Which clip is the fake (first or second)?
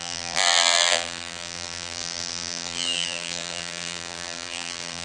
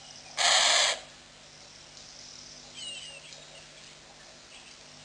first